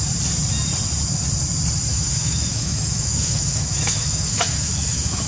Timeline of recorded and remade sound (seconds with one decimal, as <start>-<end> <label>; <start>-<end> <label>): 0.0-1.9 recorded; 1.9-5.3 remade